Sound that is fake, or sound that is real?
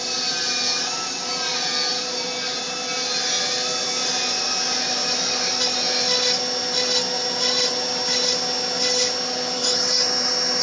real